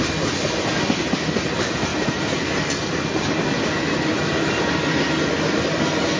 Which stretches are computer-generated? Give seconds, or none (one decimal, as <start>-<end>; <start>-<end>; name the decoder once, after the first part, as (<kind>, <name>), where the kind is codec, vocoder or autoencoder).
none